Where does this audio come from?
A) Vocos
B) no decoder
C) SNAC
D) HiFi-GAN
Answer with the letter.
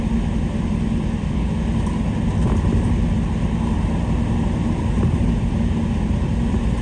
B